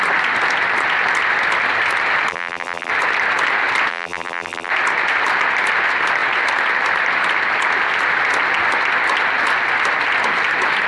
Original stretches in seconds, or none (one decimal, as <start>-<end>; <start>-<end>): 0.0-2.3; 2.9-3.9; 4.7-10.9